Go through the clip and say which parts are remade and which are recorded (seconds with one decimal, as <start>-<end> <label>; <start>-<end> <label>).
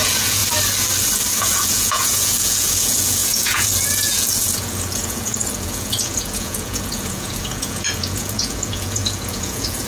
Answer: 0.0-0.4 remade; 0.4-1.4 recorded; 1.4-9.9 remade